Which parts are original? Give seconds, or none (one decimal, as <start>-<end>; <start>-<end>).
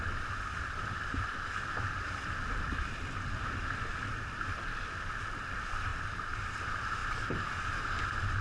0.0-8.4